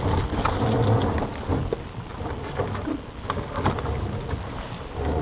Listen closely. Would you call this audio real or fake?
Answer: real